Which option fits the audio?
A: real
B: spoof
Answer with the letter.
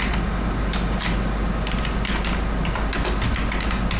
A